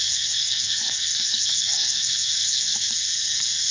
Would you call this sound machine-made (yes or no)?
yes